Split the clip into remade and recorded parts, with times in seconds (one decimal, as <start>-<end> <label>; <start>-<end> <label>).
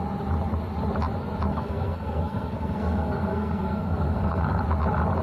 0.0-1.5 recorded; 1.5-4.6 remade; 4.6-5.2 recorded